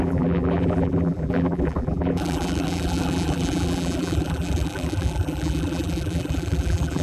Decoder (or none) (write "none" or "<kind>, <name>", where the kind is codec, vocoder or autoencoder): vocoder, BigVGAN v2